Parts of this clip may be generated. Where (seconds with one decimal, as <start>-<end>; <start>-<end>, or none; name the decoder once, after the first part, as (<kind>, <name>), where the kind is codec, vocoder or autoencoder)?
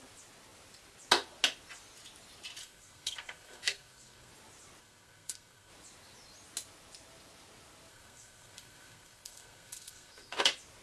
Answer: 2.6-4.3 (codec, SNAC); 4.8-5.7; 7.9-10.4